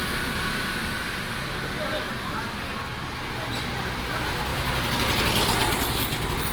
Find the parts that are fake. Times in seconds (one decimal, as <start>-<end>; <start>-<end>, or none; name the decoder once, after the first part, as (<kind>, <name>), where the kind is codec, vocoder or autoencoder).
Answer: none

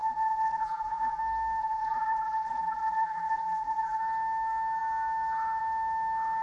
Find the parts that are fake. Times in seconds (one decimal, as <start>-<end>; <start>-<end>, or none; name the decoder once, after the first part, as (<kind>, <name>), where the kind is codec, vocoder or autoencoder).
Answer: 0.0-1.2 (vocoder, BigVGAN v2); 1.6-4.0